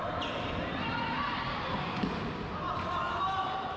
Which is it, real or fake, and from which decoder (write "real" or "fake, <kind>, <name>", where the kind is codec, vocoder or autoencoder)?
real